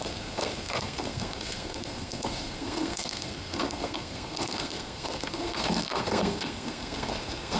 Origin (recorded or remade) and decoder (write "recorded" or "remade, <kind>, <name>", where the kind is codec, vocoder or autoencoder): remade, codec, SNAC